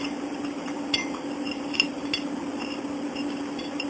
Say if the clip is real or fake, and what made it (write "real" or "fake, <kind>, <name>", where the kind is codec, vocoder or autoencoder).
real